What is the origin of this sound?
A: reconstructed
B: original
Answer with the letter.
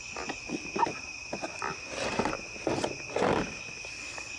B